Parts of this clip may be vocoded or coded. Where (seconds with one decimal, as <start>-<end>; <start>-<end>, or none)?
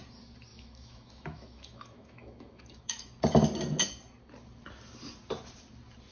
0.5-3.2